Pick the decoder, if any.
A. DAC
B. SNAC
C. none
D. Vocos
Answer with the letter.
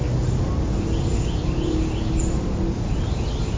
C